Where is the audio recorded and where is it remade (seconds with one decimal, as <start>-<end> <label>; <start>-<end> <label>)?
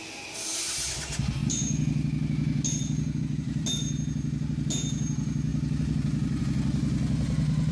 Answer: 0.0-7.7 recorded